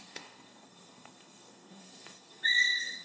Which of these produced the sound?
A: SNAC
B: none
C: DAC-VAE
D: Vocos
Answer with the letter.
A